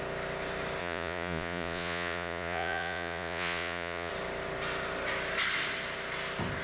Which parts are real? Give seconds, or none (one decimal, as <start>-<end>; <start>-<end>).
0.0-0.8; 4.1-6.6